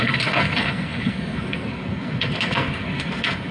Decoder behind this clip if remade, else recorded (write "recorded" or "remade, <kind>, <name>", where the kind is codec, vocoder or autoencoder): remade, codec, SNAC